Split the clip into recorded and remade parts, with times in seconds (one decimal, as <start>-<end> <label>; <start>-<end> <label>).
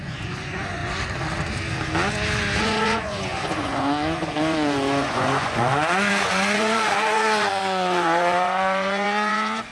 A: 0.0-0.8 remade; 0.8-2.6 recorded; 2.6-9.7 remade